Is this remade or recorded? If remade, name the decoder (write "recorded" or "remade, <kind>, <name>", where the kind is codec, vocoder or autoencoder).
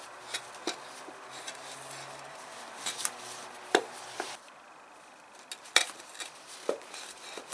recorded